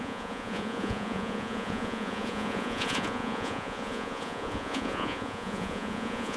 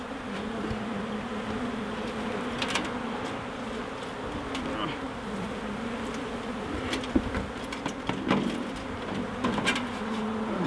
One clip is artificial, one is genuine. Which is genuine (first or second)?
second